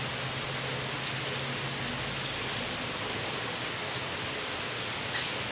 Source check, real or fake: real